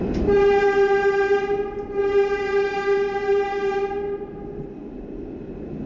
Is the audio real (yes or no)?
yes